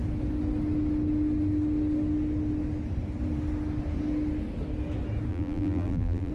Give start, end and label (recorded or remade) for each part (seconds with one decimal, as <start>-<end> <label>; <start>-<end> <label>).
0.0-5.3 recorded; 5.3-6.3 remade